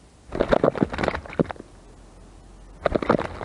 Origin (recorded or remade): recorded